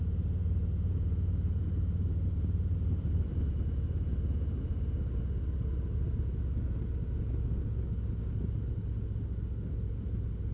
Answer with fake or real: real